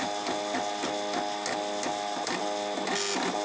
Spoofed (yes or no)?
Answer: no